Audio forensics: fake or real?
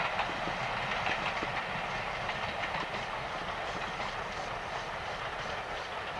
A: real